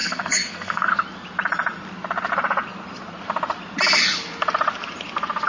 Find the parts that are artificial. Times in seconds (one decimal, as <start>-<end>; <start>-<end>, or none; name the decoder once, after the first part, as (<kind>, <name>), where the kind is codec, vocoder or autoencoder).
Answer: 0.0-0.9 (codec, SNAC)